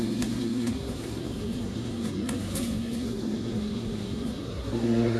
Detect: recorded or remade remade